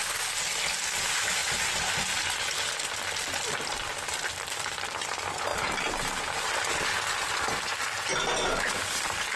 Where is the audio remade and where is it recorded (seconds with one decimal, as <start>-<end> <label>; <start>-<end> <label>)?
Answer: 0.0-9.4 recorded